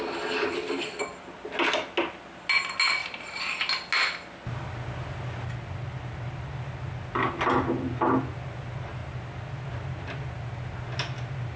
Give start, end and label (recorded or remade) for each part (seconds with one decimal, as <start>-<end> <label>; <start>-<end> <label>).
0.0-11.6 recorded